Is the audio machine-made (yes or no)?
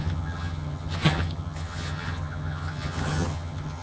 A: yes